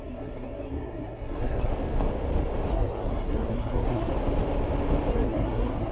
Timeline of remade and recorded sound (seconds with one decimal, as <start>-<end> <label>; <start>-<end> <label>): 0.0-1.7 remade; 1.7-2.7 recorded; 2.7-4.1 remade; 4.1-5.1 recorded; 5.1-5.9 remade